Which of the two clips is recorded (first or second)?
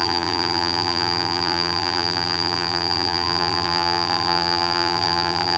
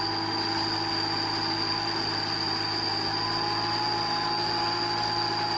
second